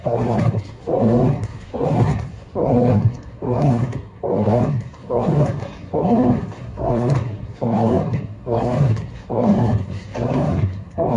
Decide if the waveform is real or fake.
fake